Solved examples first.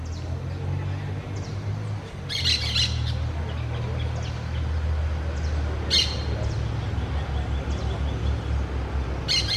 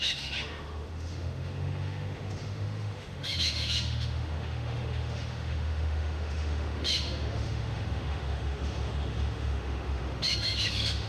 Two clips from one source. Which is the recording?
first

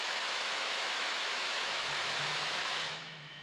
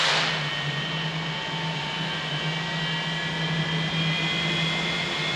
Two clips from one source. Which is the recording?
second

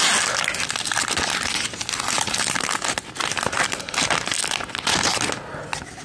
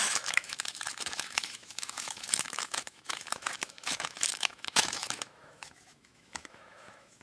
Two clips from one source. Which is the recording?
first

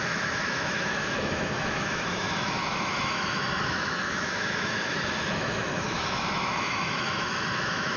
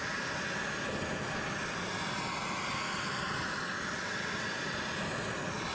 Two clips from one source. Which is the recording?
second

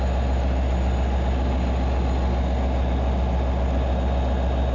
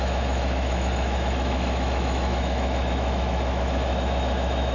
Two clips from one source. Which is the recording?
first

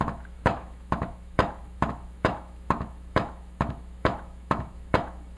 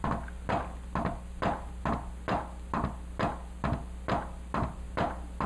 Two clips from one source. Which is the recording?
second